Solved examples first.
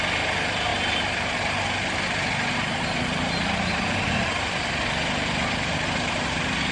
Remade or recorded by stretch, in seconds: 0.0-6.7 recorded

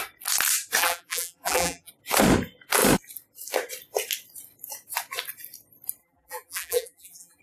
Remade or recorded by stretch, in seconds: 0.0-0.8 recorded; 0.8-1.9 remade; 1.9-6.0 recorded; 6.0-7.4 remade

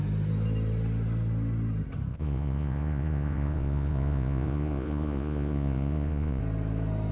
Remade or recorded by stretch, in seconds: 0.0-2.1 recorded; 2.1-6.4 remade; 6.4-7.1 recorded

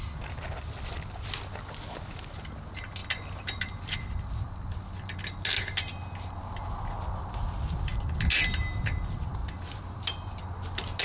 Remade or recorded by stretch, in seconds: 0.0-9.4 recorded; 9.4-10.4 remade; 10.4-11.0 recorded

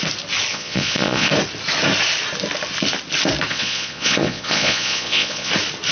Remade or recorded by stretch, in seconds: 0.0-0.5 recorded; 0.5-1.3 remade; 1.3-3.5 recorded; 3.5-5.5 remade; 5.5-5.9 recorded

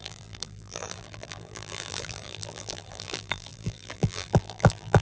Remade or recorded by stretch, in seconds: 0.0-5.0 remade